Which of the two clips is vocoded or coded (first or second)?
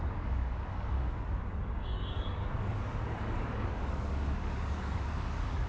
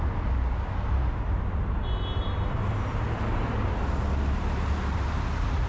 first